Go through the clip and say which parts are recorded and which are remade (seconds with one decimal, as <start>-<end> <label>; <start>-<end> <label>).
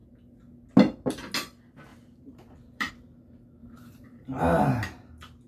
0.0-1.9 recorded; 1.9-2.9 remade; 2.9-3.6 recorded; 3.6-4.4 remade; 4.4-5.5 recorded